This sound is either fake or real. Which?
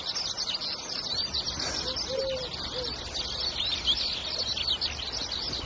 real